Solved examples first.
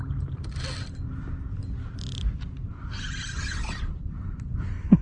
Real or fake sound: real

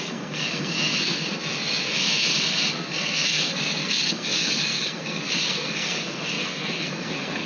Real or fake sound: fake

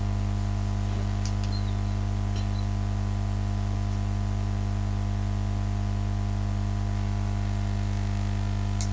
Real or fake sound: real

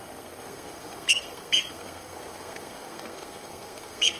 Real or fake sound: fake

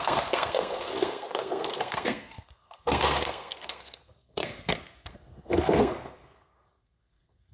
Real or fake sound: fake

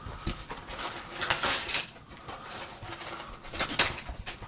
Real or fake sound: real